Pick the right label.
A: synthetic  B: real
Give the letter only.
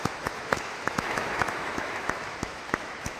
A